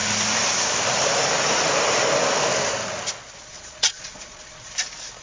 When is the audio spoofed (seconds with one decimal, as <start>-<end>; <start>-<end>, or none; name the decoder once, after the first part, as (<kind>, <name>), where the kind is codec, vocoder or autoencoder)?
3.5-4.7 (vocoder, Vocos)